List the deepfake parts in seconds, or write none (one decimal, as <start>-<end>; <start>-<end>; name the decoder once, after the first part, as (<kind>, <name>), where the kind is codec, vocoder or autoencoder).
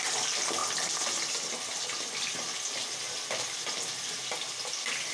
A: none